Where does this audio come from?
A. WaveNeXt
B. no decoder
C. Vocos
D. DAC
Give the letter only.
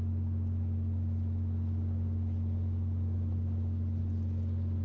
B